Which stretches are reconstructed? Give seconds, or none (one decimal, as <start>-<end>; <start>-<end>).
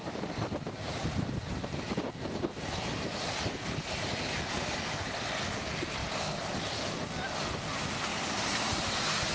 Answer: 0.0-5.3; 6.0-6.6